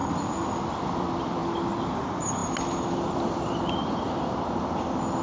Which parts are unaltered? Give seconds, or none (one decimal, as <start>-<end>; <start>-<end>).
0.0-0.6; 1.4-2.0